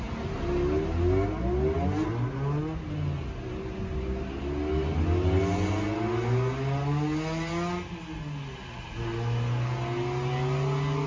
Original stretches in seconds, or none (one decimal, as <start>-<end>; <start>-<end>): 0.0-11.1